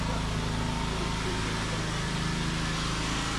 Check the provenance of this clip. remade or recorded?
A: recorded